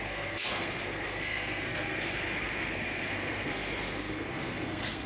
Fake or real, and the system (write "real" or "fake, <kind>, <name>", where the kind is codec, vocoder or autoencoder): fake, codec, SNAC